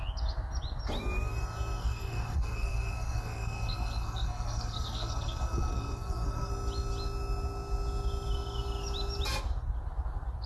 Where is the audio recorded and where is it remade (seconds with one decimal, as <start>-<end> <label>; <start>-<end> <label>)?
0.0-1.8 recorded; 1.8-6.5 remade; 6.5-10.5 recorded